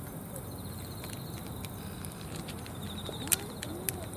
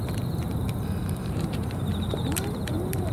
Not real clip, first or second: second